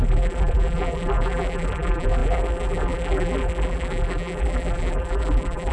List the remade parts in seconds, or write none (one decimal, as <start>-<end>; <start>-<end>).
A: 0.0-5.7